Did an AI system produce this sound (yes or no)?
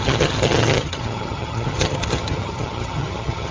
yes